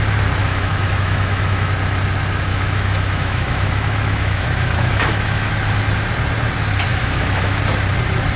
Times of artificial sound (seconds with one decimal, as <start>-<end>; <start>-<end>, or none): 0.4-1.7; 2.5-5.5; 6.9-7.6